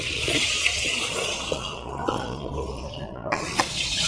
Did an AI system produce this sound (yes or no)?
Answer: yes